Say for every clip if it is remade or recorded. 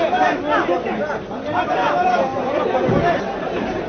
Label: recorded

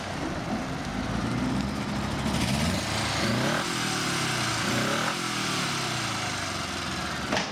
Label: recorded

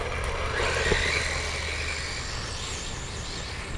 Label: recorded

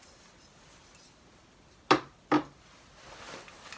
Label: recorded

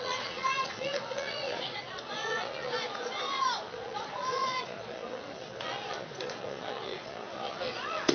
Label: remade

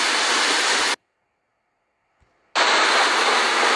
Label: recorded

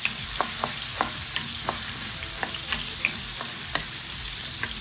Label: recorded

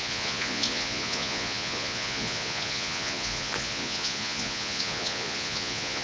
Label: remade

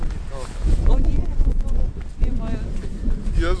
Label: recorded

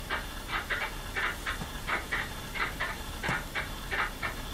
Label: remade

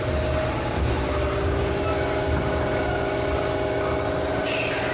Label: recorded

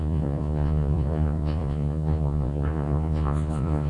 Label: remade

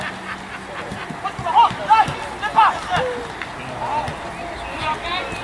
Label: recorded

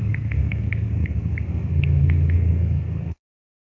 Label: remade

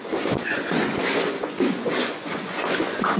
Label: remade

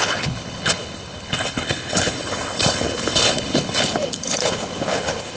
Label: remade